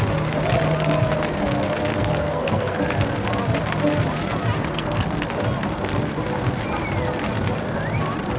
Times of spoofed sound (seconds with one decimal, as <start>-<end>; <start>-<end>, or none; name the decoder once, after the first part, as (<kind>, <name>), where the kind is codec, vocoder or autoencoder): 1.9-2.8 (codec, SNAC); 4.6-5.3